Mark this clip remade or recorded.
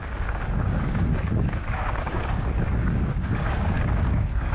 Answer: remade